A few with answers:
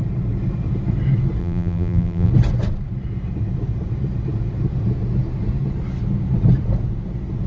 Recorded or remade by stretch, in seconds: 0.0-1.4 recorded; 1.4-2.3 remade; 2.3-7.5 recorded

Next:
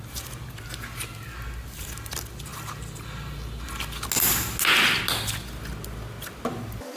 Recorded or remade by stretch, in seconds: 0.0-7.0 recorded